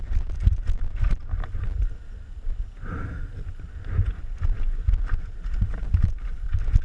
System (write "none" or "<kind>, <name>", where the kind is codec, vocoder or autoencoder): none